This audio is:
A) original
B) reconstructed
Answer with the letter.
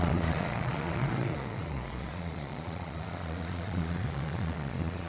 B